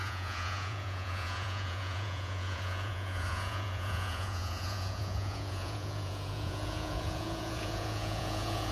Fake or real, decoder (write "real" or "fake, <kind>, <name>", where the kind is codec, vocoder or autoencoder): fake, vocoder, Vocos